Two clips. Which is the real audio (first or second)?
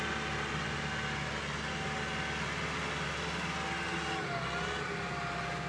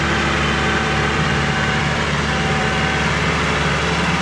first